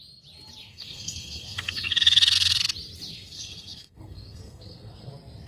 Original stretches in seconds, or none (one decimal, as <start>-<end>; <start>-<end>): 0.0-0.6; 2.6-3.1; 5.1-5.5